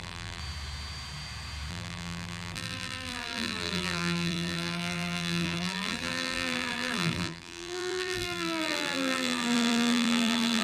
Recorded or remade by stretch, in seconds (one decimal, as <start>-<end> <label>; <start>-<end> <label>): 0.0-0.4 remade; 0.4-1.7 recorded; 1.7-10.6 remade